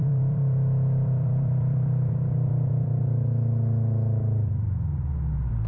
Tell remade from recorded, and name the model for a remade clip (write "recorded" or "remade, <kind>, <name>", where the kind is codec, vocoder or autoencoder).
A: remade, vocoder, BigVGAN v2